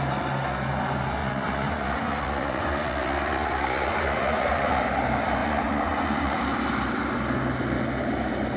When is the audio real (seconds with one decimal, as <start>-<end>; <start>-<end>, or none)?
0.0-1.2; 4.8-5.4; 6.4-8.6